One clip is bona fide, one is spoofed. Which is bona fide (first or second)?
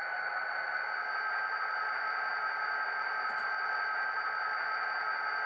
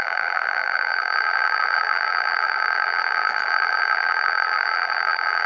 first